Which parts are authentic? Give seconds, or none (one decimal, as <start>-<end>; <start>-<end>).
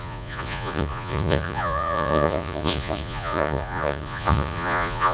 none